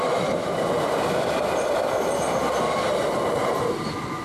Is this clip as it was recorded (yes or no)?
yes